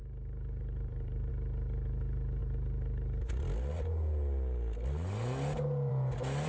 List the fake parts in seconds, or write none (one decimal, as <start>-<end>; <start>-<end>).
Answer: 0.0-1.3